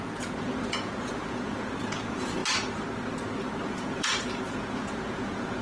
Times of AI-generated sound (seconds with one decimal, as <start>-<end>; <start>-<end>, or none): 0.0-2.4; 3.7-5.6